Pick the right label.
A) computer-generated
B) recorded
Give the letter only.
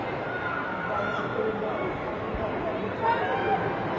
B